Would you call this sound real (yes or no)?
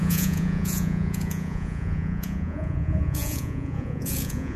no